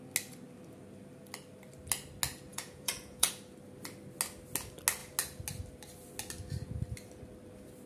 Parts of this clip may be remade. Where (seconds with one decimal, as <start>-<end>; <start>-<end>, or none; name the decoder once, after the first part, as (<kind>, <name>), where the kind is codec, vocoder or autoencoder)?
2.5-3.3 (vocoder, Vocos)